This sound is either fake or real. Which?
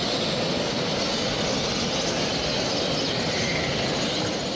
real